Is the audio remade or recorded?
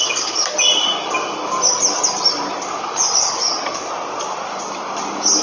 recorded